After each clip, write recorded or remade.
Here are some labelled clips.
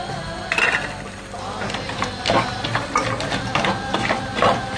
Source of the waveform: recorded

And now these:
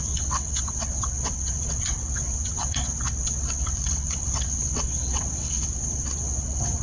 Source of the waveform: remade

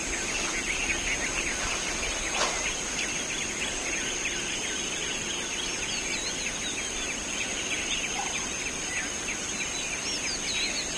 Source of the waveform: recorded